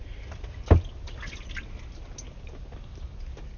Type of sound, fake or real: real